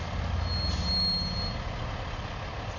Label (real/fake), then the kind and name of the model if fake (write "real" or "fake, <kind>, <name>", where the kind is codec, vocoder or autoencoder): real